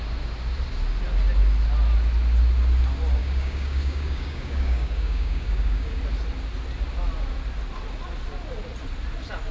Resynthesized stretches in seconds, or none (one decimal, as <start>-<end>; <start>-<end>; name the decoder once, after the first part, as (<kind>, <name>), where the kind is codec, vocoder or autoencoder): 3.2-6.0 (codec, DAC)